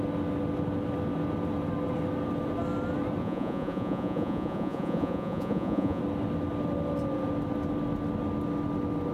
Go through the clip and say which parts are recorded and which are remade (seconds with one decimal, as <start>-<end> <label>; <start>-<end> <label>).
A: 0.0-3.2 recorded; 3.2-6.0 remade; 6.0-9.1 recorded